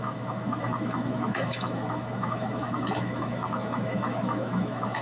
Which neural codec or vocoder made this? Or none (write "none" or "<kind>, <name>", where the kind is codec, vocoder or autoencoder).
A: autoencoder, DAC-VAE